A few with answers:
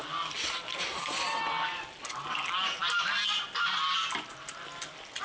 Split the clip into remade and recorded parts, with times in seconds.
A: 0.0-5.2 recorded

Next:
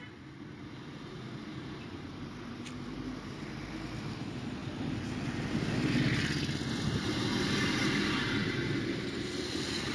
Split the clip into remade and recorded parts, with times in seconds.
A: 0.0-1.5 recorded; 1.5-3.1 remade; 3.1-8.4 recorded; 8.4-9.9 remade

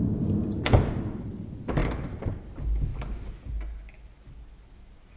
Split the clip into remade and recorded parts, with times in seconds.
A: 0.0-1.8 recorded; 1.8-2.4 remade; 2.4-5.2 recorded

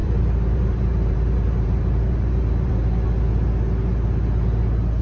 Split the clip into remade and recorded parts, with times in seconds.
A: 0.0-2.7 remade; 2.7-5.0 recorded

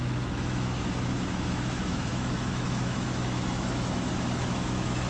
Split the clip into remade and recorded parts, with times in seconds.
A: 0.0-5.1 remade

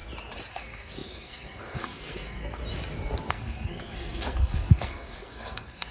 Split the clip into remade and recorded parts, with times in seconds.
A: 0.0-0.5 recorded; 0.5-2.6 remade; 2.6-3.3 recorded; 3.3-5.9 remade